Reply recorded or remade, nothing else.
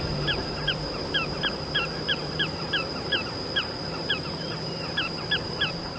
remade